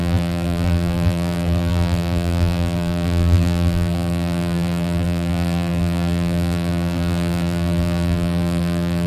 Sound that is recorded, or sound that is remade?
remade